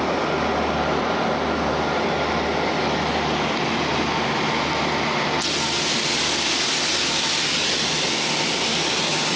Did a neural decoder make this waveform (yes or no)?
no